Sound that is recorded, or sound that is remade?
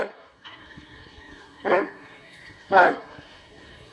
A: remade